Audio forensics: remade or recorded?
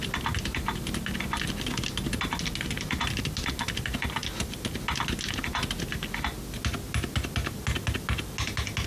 recorded